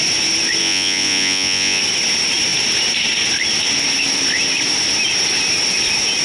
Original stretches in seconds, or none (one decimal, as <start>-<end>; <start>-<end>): 0.0-0.6; 1.8-6.2